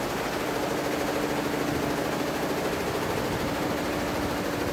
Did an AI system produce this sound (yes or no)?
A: no